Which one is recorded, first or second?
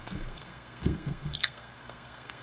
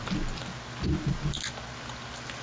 second